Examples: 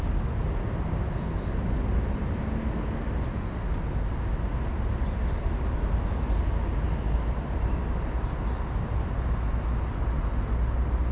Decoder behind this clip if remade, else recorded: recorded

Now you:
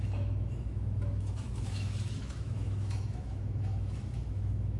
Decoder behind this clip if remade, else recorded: remade, autoencoder, DAC-VAE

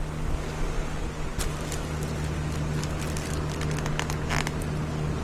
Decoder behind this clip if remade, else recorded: recorded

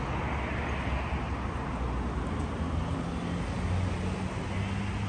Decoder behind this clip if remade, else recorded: recorded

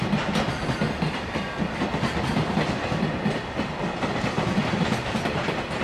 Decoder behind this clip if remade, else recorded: recorded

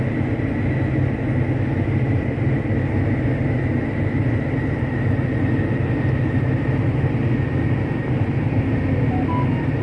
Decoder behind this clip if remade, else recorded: recorded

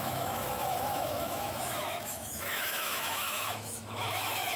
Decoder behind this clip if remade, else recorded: remade, autoencoder, DAC-VAE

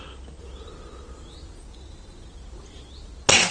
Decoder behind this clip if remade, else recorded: recorded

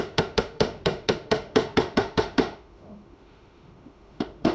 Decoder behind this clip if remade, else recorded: remade, autoencoder, DAC-VAE